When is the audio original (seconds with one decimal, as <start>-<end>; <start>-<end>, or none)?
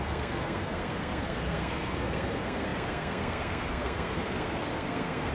none